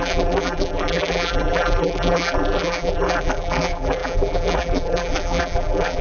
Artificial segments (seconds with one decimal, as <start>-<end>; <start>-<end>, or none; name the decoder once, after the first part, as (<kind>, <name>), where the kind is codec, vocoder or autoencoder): 0.0-6.0 (vocoder, BigVGAN v2)